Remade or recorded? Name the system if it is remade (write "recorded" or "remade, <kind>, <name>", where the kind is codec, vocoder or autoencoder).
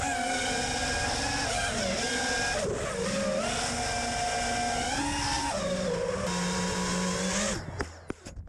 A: recorded